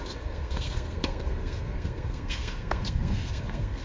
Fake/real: fake